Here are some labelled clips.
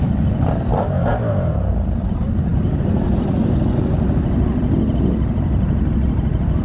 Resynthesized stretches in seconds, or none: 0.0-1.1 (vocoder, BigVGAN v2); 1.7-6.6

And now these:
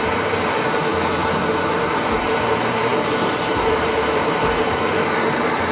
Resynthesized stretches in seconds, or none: 0.0-5.7 (vocoder, BigVGAN v2)

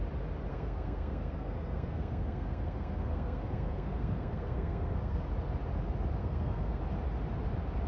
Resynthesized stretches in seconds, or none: 0.5-5.2 (codec, SNAC); 6.2-6.8

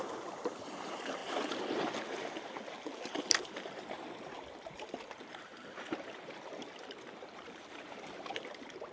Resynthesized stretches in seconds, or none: 0.0-1.2 (vocoder, BigVGAN v2); 2.0-8.9